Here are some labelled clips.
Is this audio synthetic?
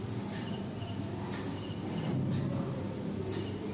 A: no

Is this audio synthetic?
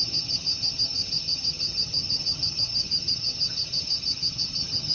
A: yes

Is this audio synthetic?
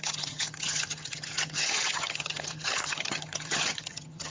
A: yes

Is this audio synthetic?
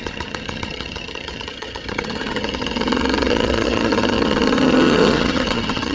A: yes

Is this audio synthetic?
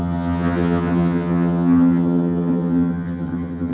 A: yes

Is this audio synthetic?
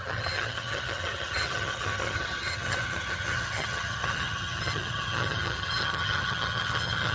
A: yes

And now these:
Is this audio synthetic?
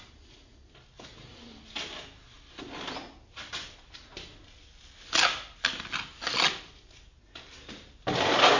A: no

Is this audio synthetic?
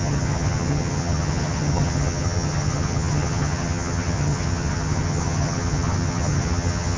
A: yes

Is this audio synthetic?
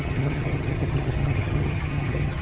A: yes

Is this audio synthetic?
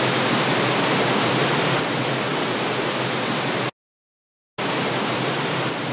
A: no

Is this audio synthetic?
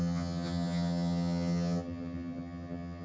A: yes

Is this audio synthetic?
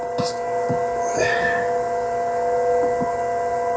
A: no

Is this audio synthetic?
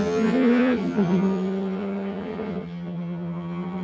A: yes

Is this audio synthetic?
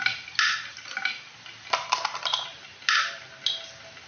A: no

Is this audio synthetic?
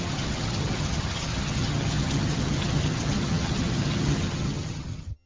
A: yes